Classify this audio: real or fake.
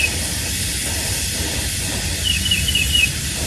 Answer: real